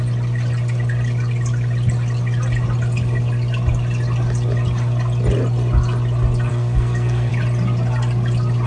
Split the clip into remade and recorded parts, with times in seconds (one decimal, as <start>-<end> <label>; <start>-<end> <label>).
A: 0.0-6.5 recorded; 6.5-7.3 remade; 7.3-8.7 recorded